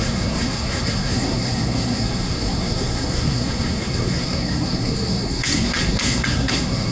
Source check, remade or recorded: remade